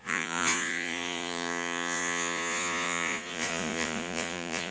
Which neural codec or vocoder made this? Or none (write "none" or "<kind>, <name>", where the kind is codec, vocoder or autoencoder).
vocoder, Vocos